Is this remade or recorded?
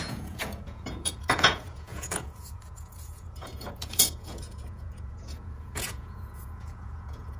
remade